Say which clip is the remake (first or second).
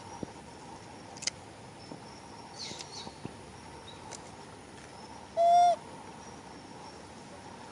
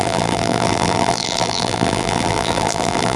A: second